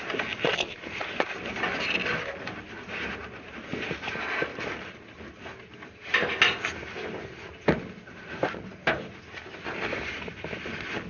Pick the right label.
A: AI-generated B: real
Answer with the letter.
B